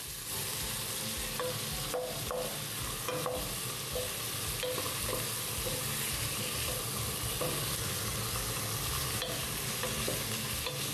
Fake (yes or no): no